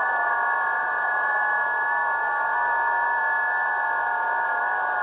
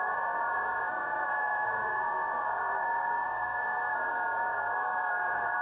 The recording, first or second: first